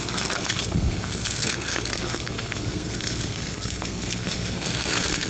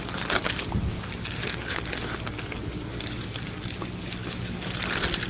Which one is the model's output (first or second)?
first